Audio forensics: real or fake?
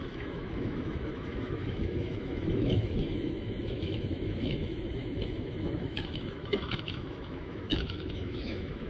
fake